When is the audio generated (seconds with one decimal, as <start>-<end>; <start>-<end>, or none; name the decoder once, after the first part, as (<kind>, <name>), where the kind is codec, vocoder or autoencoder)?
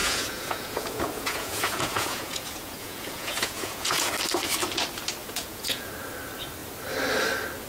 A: 0.0-4.1 (vocoder, Vocos); 5.2-5.9